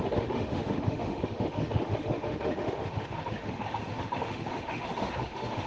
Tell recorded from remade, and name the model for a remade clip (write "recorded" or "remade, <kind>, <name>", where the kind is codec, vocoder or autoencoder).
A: remade, autoencoder, DAC-VAE